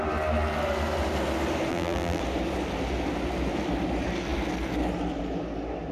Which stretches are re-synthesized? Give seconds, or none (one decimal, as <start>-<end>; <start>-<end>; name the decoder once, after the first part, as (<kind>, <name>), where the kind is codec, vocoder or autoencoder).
1.7-2.2 (vocoder, BigVGAN v2)